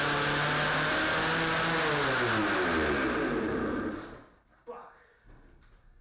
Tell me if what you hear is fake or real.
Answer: real